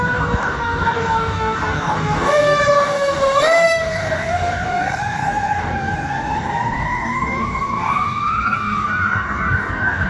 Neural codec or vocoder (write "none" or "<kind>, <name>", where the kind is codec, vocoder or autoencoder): codec, DAC